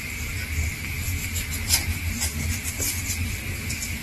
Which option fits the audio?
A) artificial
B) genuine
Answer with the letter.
B